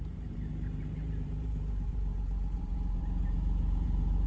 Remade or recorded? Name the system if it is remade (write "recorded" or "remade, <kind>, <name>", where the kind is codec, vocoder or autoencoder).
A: remade, vocoder, BigVGAN v2